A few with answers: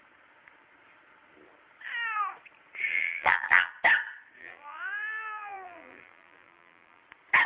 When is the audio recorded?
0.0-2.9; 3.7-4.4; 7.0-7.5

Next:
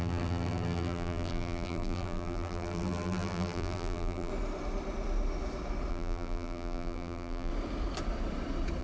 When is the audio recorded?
4.3-5.9; 7.5-8.8

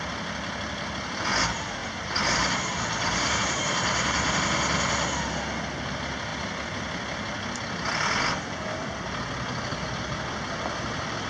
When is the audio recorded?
0.0-1.8; 4.4-11.3